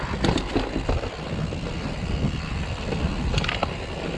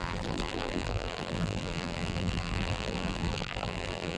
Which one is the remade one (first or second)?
second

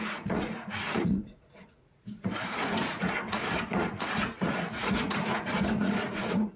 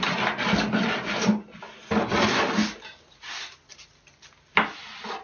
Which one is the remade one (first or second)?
first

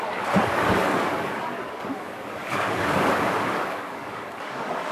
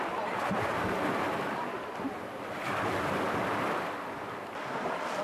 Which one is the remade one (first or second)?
first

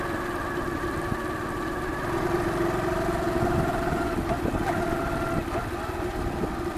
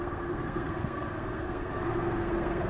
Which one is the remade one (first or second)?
second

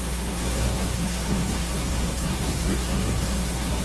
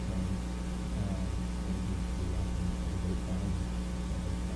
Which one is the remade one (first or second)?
first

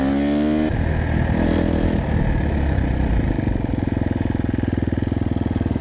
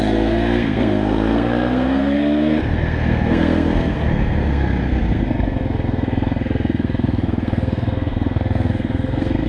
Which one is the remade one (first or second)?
second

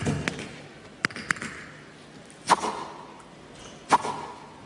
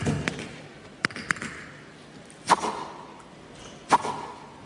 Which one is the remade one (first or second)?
second